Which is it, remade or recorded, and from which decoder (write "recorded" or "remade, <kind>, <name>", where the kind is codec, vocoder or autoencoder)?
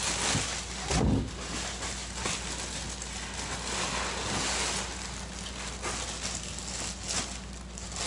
recorded